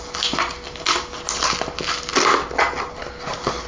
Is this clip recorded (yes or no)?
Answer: yes